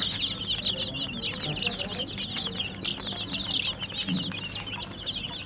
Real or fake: real